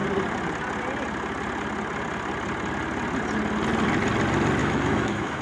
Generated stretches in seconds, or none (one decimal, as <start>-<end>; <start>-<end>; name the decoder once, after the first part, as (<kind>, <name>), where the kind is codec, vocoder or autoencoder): 4.6-5.4 (autoencoder, DAC-VAE)

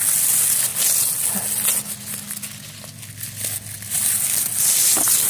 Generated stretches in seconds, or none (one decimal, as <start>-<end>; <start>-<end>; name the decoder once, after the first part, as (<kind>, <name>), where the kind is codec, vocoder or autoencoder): none